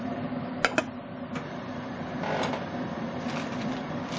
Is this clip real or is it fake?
real